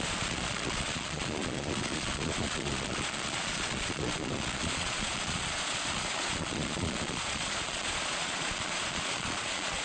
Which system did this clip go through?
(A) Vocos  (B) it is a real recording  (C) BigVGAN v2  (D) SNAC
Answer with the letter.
A